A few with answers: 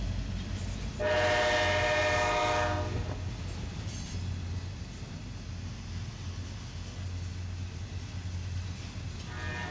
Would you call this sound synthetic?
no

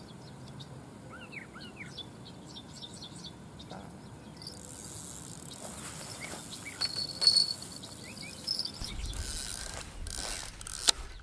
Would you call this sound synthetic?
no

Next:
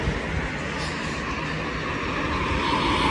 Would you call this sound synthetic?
no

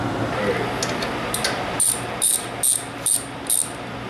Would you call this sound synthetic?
no